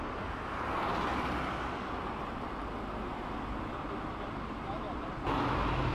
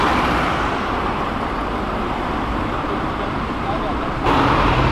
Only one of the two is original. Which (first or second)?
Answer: first